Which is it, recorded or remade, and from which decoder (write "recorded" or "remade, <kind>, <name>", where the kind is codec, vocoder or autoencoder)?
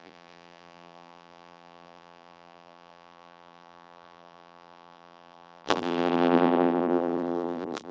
remade, vocoder, BigVGAN v2